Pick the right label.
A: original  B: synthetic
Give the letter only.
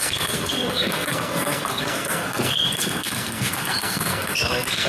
B